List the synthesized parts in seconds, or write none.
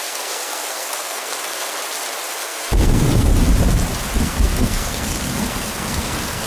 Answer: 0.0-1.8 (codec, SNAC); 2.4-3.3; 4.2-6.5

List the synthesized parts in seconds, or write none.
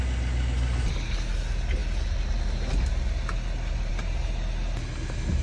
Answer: none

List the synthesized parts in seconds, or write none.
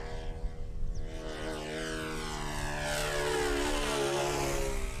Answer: none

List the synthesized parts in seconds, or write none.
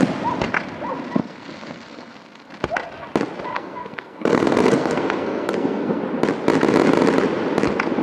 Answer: 1.2-2.5 (codec, SNAC); 3.5-6.0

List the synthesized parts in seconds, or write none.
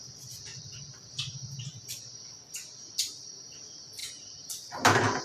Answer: 0.5-2.9 (vocoder, BigVGAN v2)